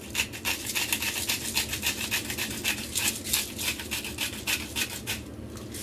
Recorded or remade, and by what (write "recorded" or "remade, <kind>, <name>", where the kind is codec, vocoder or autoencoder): recorded